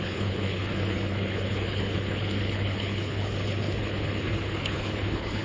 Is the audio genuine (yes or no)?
no